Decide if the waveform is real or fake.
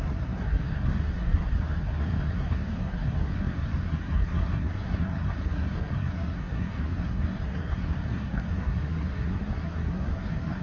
fake